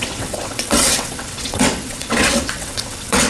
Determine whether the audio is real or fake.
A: fake